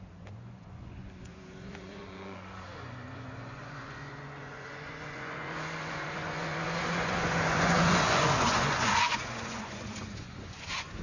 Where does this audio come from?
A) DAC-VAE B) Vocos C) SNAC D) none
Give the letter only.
B